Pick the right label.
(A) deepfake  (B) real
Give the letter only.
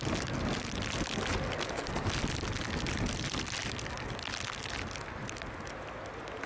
B